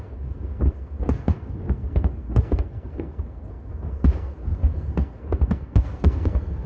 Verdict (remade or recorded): remade